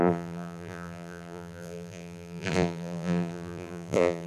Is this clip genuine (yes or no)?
no